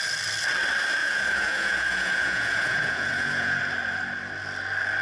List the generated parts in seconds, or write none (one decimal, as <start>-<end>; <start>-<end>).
1.0-3.6